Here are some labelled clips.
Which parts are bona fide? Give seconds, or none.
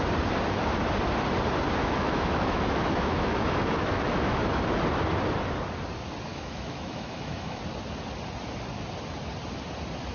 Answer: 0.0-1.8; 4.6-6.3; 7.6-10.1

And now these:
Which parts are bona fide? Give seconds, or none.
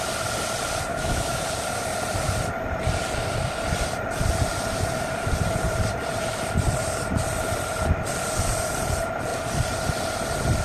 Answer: 0.0-0.9; 1.4-10.6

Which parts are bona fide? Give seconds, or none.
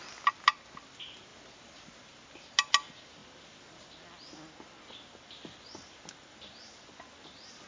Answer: 0.0-7.7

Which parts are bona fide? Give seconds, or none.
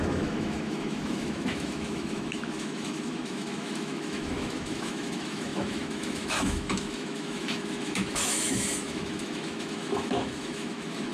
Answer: none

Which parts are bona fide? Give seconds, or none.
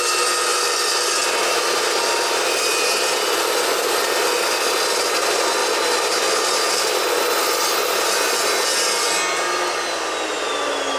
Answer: 0.0-11.0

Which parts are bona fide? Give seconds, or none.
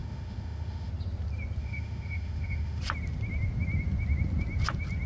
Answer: 0.9-1.6; 2.8-5.1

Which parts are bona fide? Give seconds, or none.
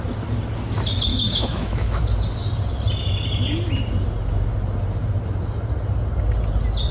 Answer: 0.0-1.1; 2.0-6.9